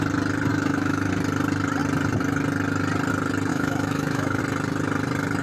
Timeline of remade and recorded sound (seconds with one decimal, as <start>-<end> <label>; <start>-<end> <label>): 0.0-0.5 recorded; 0.5-1.1 remade; 1.1-3.5 recorded; 3.5-4.4 remade; 4.4-5.4 recorded